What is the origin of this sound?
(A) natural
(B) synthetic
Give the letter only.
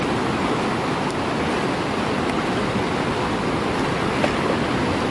A